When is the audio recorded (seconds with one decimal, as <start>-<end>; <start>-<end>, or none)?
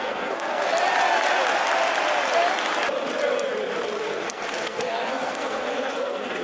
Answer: 0.7-4.0